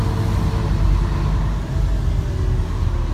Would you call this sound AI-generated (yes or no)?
no